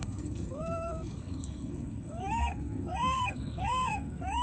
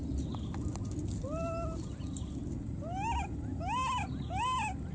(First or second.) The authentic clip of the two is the second